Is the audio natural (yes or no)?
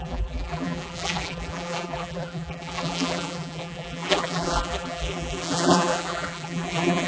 no